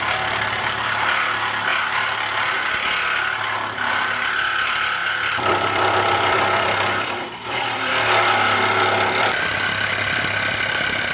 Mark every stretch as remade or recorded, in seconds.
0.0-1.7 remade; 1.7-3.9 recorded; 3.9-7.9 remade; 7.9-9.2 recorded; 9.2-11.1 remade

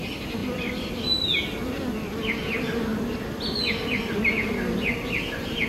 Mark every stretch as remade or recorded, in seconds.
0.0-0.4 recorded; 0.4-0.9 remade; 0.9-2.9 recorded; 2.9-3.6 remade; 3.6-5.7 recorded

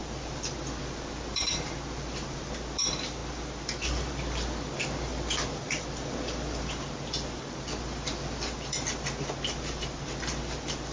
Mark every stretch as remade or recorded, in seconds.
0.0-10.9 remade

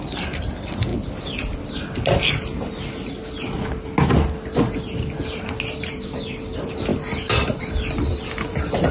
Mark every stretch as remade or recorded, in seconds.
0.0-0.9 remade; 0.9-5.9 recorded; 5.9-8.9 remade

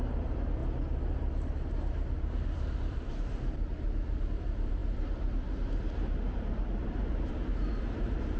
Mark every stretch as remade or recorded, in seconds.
0.0-0.6 remade; 0.6-1.1 recorded; 1.1-8.4 remade